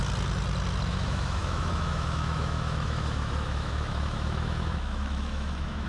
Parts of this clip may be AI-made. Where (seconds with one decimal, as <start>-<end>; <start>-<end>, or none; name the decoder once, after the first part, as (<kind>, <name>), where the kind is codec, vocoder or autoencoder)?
0.9-5.9 (autoencoder, DAC-VAE)